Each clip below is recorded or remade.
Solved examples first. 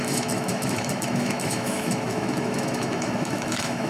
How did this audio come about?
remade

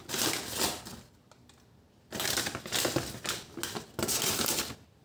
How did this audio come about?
recorded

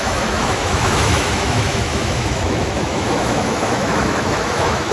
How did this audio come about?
remade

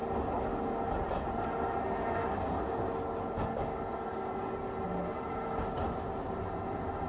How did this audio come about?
recorded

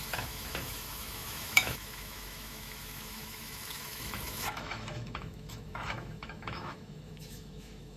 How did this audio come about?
remade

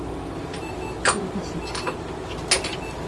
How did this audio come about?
recorded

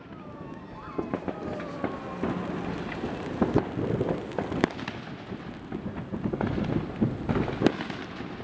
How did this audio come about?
recorded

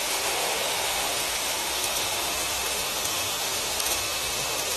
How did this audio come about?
remade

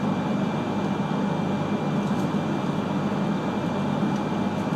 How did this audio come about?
recorded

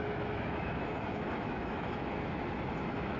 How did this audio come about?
remade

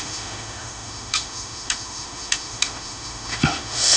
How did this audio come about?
remade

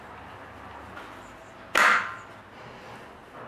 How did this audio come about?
recorded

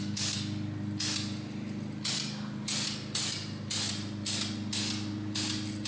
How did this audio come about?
recorded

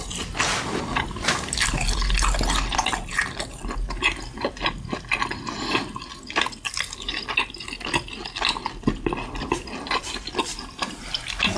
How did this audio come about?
recorded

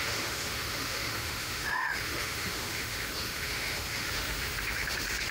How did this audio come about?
remade